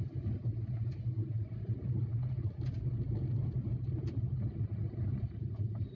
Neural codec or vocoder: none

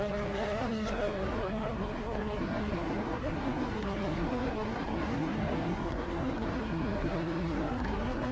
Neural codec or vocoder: codec, SNAC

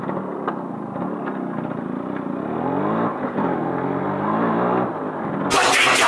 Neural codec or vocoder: none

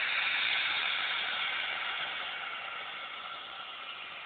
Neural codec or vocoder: vocoder, Vocos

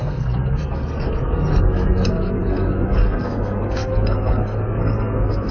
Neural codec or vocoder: codec, SNAC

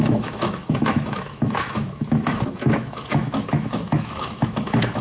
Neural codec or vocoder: autoencoder, DAC-VAE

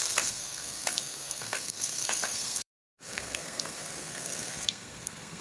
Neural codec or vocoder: codec, SNAC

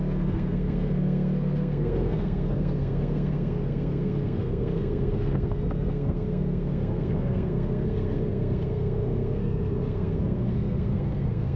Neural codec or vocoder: codec, SNAC